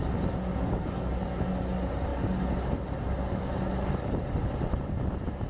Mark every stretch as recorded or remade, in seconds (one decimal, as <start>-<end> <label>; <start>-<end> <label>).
0.0-5.5 recorded